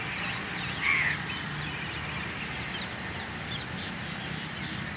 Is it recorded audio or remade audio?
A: recorded